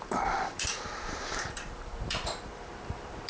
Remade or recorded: remade